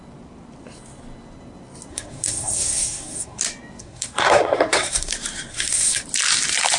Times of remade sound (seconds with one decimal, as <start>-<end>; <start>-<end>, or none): 1.9-3.4; 3.8-5.1; 5.5-6.0